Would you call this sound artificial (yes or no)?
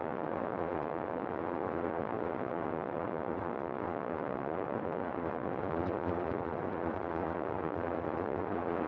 yes